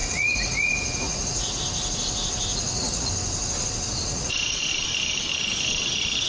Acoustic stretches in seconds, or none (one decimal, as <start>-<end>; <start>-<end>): 1.6-2.5; 3.1-4.0; 4.7-6.3